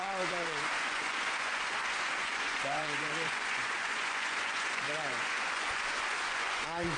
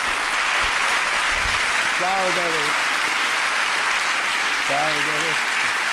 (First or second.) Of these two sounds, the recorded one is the second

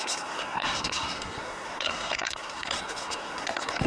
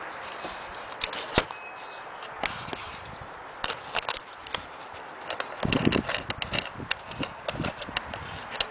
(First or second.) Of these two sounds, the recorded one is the second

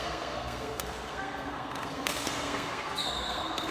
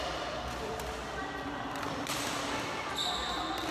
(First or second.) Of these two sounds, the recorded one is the second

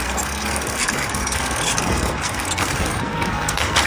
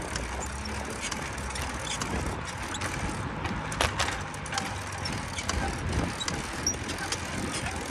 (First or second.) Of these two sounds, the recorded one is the second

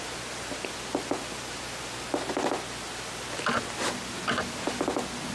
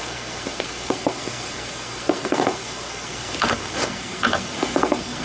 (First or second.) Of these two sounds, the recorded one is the first